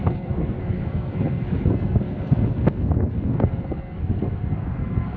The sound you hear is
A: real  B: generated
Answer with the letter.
B